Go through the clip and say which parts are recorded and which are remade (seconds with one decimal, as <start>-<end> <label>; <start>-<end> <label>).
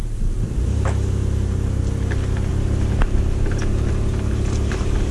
0.0-1.8 remade; 1.8-2.5 recorded; 2.5-5.1 remade